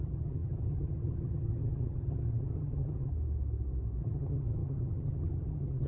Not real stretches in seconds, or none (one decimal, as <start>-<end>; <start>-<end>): 0.0-3.1; 4.0-5.9